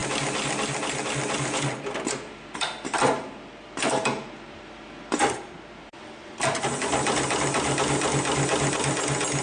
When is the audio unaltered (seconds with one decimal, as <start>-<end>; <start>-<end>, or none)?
0.0-9.4